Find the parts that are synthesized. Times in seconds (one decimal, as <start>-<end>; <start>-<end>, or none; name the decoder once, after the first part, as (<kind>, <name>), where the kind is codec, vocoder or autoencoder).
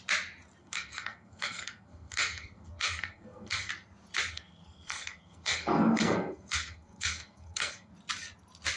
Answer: 0.6-3.7 (codec, SNAC); 4.3-7.9